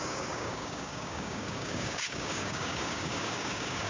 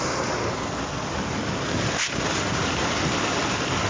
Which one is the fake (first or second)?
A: first